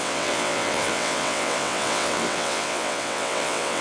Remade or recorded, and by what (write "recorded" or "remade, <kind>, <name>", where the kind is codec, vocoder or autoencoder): remade, vocoder, WaveNeXt